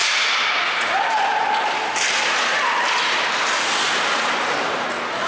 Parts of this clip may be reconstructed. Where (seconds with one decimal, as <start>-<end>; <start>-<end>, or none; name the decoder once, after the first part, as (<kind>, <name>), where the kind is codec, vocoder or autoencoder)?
none